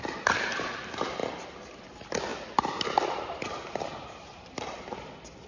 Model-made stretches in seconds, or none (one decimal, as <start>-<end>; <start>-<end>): 1.2-1.8; 4.3-4.8